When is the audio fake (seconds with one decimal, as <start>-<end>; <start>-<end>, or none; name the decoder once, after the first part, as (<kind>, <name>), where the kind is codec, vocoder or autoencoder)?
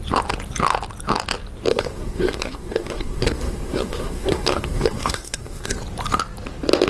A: 1.7-5.8 (codec, SNAC)